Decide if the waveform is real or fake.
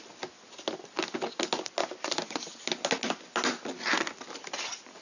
real